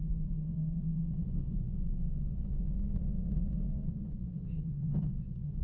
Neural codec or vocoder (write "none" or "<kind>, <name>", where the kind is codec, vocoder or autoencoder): vocoder, Vocos